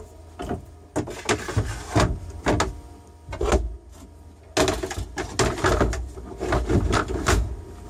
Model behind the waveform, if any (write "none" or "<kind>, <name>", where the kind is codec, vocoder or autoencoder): none